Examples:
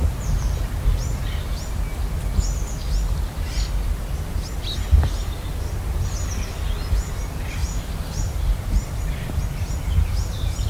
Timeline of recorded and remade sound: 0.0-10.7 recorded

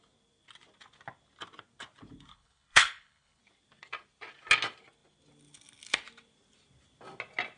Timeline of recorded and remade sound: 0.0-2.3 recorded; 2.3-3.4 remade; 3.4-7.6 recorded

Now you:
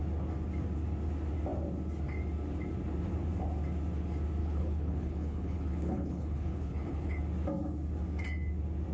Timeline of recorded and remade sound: 0.0-4.4 recorded; 4.4-7.2 remade; 7.2-8.9 recorded

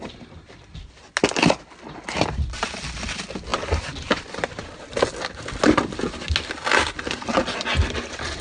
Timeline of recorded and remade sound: 0.0-8.4 recorded

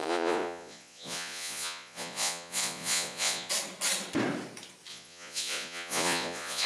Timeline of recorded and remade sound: 0.0-3.5 remade; 3.5-4.9 recorded; 4.9-6.7 remade

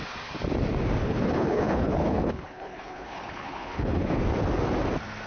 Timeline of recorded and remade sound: 0.0-1.0 recorded; 1.0-4.2 remade; 4.2-5.3 recorded